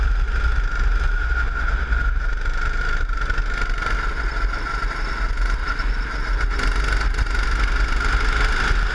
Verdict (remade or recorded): recorded